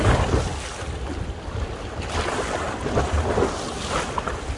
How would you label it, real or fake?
real